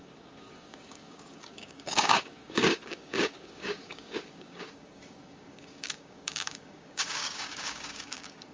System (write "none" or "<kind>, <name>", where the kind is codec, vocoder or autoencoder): codec, DAC